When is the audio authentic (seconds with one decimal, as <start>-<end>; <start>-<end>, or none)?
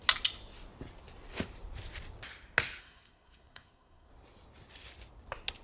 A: 0.0-2.8; 4.1-5.6